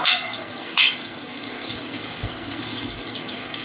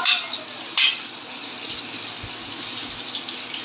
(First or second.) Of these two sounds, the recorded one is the second